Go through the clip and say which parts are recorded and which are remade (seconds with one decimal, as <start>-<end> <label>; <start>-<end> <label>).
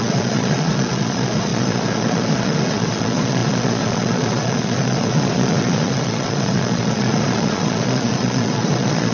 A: 0.0-9.1 remade